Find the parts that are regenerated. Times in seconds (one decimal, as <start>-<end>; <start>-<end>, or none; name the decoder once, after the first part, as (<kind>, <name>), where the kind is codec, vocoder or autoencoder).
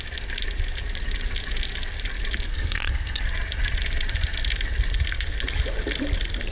2.5-3.2 (codec, SNAC)